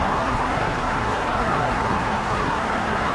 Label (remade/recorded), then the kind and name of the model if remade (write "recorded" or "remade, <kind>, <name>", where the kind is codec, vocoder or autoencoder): remade, codec, SNAC